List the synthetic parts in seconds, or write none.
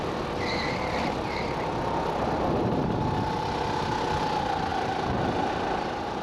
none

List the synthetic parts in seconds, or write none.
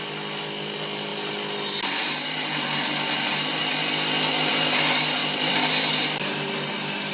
5.2-5.9